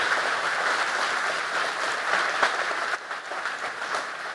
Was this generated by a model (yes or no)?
no